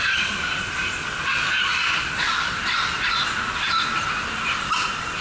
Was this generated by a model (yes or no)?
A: no